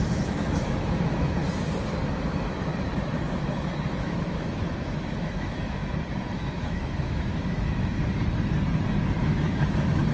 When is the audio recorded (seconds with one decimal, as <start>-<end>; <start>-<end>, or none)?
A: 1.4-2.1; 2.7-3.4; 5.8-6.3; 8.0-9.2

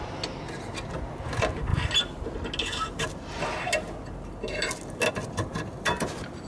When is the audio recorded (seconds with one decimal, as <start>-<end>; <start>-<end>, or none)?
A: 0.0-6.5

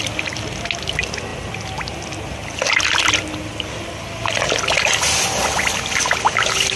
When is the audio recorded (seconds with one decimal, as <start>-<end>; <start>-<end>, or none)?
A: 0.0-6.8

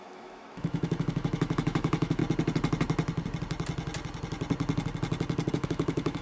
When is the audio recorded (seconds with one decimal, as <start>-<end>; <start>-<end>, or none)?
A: 2.2-5.5